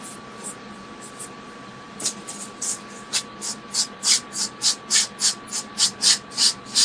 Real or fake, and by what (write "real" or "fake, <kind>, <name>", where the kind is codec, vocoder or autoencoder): real